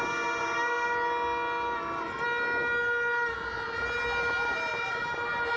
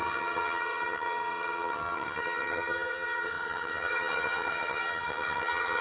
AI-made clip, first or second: second